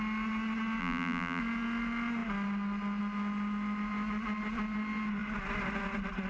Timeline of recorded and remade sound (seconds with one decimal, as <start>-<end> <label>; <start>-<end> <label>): 0.0-0.8 recorded; 0.8-1.4 remade; 1.4-6.3 recorded